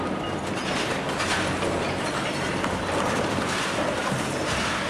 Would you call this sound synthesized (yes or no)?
no